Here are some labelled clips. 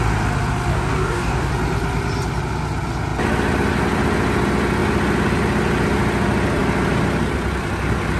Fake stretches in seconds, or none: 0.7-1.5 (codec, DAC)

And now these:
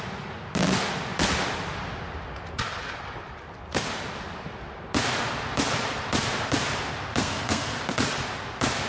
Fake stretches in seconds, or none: 7.2-7.8 (codec, SNAC)

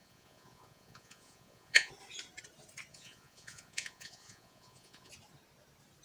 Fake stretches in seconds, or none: 0.0-1.9 (vocoder, Vocos); 2.9-5.1

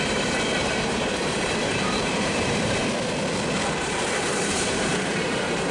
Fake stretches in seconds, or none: 0.0-2.8 (vocoder, BigVGAN v2); 3.8-5.7

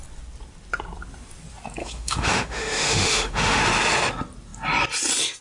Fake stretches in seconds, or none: 1.8-3.6 (autoencoder, DAC-VAE)

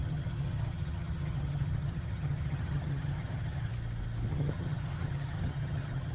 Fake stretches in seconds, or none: 0.0-3.7 (vocoder, HiFi-GAN); 4.3-6.1